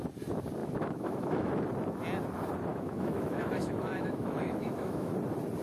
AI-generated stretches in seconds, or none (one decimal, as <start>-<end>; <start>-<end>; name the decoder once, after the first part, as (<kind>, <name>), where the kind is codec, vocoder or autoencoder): 0.6-1.5 (autoencoder, DAC-VAE); 2.7-5.1